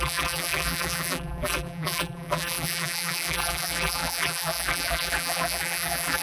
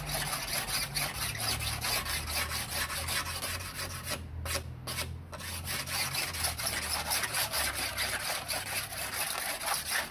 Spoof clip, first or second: first